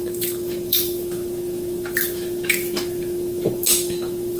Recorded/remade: remade